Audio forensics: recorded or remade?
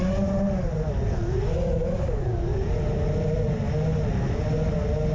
recorded